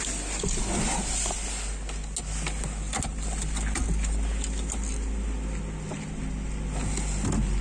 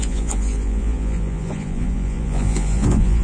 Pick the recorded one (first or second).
first